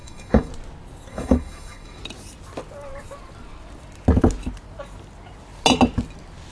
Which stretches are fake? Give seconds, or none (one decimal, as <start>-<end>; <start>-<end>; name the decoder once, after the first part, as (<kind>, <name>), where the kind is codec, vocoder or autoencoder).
0.0-0.5 (autoencoder, DAC-VAE); 1.1-2.0